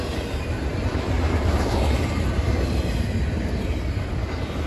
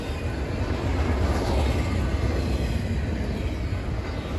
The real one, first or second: second